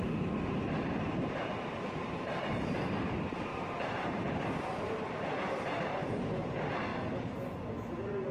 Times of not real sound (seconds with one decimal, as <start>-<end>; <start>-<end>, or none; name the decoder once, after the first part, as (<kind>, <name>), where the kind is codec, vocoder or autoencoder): 3.5-6.1 (vocoder, BigVGAN v2)